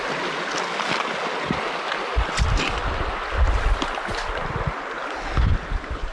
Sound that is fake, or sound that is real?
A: real